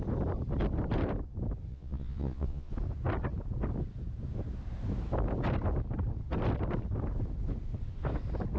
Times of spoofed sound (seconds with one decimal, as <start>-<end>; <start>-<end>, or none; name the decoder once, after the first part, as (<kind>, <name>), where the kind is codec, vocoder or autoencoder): 1.7-2.7 (vocoder, Vocos)